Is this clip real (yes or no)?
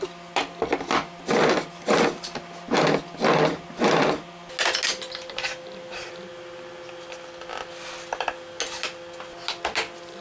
yes